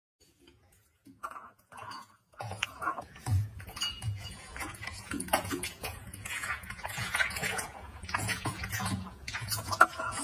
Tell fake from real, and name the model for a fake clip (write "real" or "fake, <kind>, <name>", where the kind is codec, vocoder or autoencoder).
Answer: fake, vocoder, Vocos